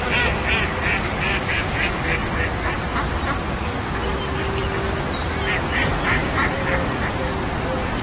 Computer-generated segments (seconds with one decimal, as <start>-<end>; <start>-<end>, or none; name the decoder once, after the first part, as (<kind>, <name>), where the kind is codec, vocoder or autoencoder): none